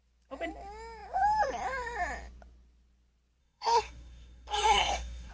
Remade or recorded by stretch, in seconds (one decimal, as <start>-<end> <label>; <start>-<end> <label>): 0.0-3.4 recorded; 3.4-5.3 remade